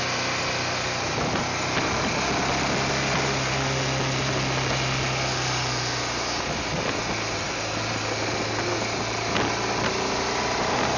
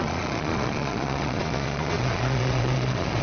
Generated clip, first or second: second